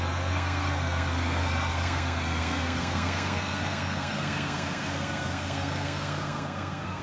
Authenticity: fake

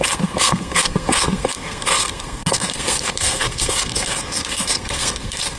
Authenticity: fake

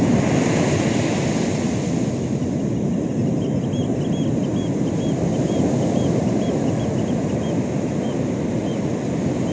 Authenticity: real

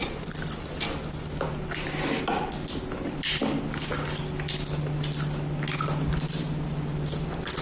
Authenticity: real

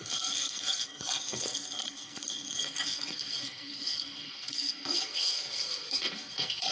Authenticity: fake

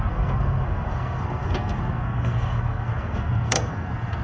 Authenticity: fake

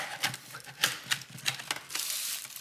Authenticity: real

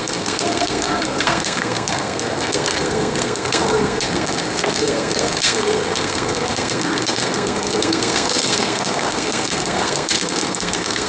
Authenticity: fake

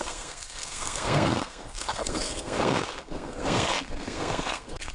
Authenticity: fake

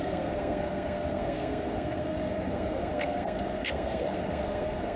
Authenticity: fake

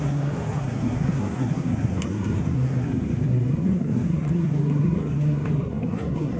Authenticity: fake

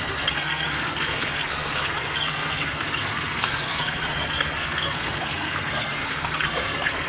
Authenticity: fake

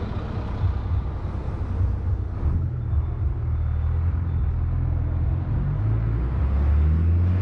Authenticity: real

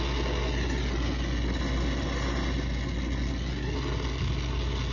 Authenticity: real